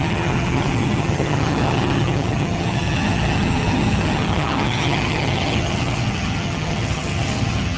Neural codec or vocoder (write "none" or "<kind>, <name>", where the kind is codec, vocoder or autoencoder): vocoder, HiFi-GAN